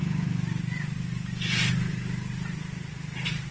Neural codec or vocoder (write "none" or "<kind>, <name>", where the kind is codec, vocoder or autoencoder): none